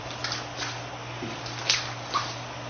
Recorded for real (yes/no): yes